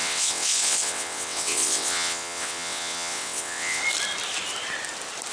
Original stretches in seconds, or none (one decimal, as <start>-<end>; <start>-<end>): 3.8-5.3